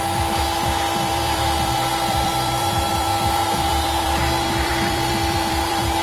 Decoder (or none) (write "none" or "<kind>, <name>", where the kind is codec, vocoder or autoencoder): vocoder, BigVGAN v2